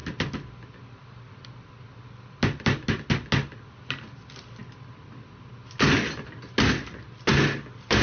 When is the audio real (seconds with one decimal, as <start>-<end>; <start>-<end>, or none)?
0.0-8.0